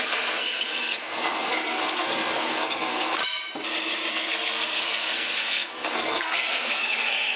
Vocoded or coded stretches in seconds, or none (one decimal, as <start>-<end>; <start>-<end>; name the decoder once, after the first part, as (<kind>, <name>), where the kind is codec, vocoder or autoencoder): 0.0-3.2 (codec, SNAC); 4.1-7.4